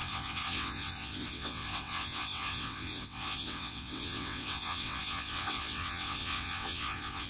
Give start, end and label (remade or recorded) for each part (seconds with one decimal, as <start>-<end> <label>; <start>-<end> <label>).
0.0-7.3 remade